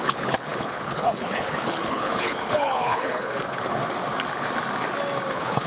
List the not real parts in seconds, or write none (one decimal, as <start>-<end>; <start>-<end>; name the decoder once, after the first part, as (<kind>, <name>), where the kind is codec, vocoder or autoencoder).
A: 0.0-3.8 (codec, HILCodec); 5.3-5.7

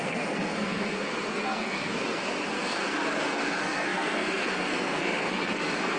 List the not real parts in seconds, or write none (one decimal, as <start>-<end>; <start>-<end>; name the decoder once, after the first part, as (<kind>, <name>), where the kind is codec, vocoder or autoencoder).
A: 0.0-6.0 (codec, SNAC)

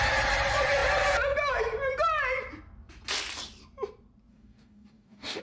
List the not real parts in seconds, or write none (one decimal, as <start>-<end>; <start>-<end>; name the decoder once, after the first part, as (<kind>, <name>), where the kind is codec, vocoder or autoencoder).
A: 4.3-5.4 (codec, DAC)

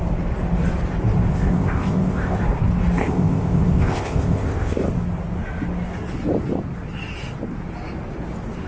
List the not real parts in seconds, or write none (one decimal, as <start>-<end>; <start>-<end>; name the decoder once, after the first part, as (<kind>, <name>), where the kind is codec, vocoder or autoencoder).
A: 1.3-2.4 (codec, ZipCodec); 3.0-4.9

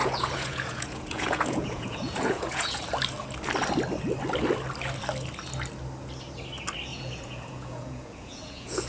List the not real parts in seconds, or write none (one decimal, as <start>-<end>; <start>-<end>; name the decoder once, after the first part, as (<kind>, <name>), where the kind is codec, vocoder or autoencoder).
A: 0.0-2.8 (vocoder, Vocos); 6.9-8.9

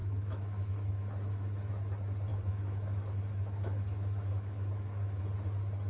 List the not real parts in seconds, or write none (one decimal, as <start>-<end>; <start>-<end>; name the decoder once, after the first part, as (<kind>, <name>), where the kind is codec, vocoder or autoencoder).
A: 0.0-1.7 (autoencoder, DAC-VAE); 2.3-5.2